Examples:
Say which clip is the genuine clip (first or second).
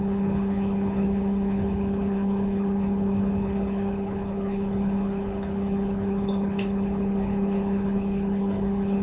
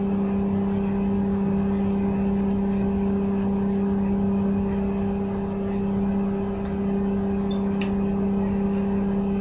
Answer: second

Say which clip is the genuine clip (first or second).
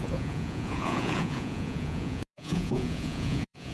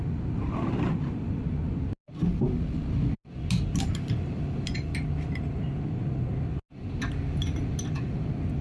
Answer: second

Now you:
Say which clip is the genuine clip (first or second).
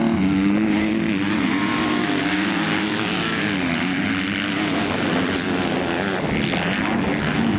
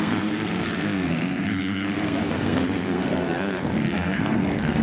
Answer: first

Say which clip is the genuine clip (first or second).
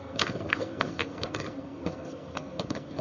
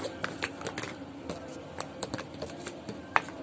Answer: second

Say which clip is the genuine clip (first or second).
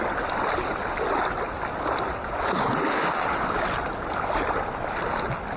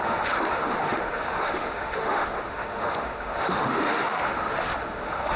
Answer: first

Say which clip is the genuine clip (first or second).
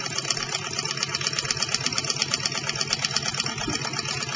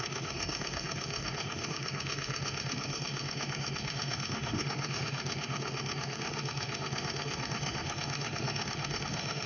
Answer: first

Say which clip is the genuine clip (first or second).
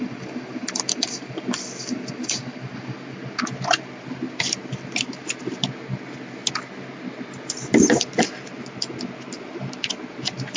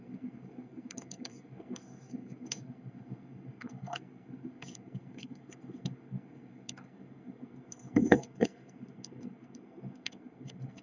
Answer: first